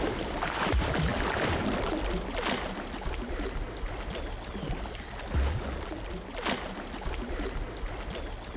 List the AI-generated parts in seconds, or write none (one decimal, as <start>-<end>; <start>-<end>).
none

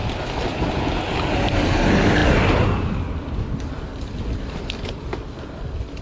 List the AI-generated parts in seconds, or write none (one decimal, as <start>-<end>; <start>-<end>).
none